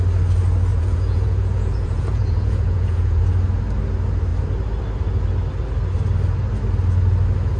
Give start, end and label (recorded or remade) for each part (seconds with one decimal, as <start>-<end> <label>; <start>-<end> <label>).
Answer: 0.0-0.7 recorded; 0.7-3.2 remade; 3.2-7.6 recorded